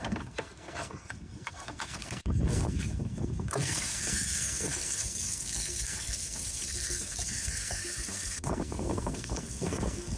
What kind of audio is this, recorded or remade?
remade